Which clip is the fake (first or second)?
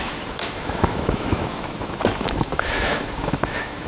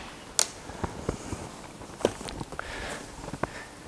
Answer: first